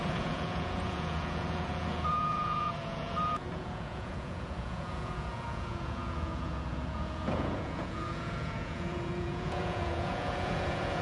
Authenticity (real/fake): fake